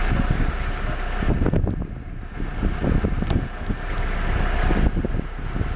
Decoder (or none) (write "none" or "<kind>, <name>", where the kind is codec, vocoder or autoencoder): none